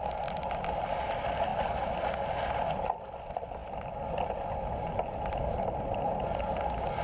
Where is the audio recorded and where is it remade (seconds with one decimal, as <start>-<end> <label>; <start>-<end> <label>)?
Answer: 0.0-7.0 recorded